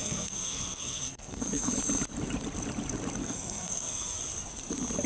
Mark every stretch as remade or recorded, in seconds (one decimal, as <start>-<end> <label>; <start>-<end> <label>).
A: 0.0-1.7 remade; 1.7-3.2 recorded; 3.2-4.2 remade; 4.2-5.1 recorded